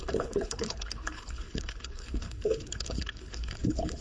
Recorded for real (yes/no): no